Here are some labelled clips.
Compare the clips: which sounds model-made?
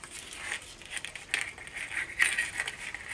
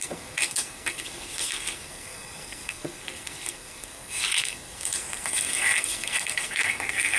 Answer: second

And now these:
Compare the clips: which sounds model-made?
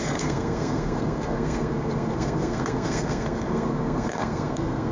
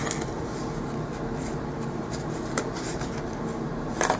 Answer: first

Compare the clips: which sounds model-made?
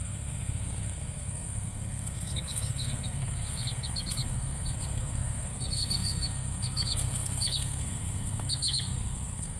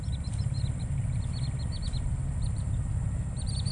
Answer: first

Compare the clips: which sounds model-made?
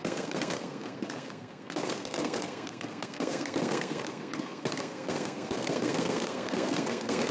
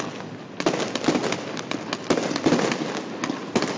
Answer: first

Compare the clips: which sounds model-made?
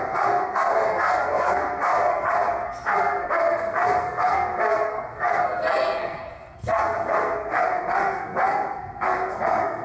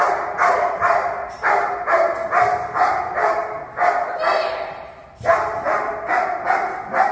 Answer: first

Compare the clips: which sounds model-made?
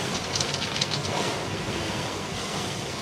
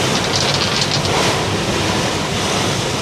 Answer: first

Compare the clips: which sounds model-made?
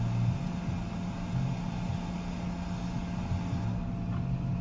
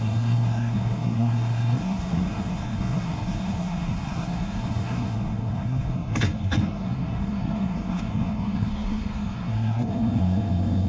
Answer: second